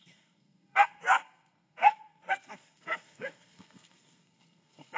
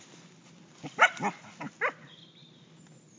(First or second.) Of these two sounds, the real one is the second